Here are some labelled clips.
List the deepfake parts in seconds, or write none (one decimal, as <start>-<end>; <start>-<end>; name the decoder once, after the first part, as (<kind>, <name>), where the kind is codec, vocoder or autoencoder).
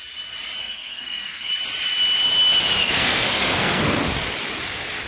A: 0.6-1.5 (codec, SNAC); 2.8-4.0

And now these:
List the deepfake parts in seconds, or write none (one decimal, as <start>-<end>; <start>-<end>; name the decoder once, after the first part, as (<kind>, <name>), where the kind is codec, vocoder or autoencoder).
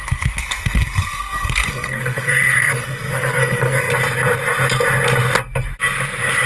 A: 0.0-3.9 (codec, SNAC)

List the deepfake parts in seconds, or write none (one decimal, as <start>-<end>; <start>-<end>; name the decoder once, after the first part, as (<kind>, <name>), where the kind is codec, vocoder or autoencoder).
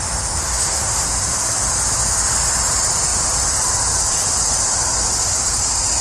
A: 0.4-1.1 (codec, SNAC)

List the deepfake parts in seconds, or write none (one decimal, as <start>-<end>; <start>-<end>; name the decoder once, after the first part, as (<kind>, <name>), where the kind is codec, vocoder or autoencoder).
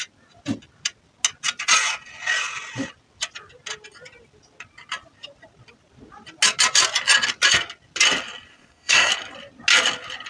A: 8.5-9.1 (codec, SNAC)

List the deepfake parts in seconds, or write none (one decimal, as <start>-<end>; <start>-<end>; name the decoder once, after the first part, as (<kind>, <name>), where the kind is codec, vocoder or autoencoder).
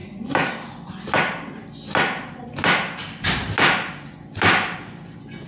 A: none